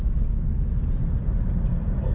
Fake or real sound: real